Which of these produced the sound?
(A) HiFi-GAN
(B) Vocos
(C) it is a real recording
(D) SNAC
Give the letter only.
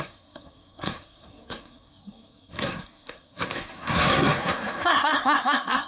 D